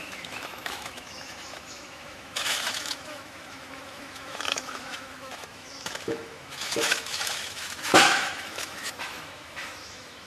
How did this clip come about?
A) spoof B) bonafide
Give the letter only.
A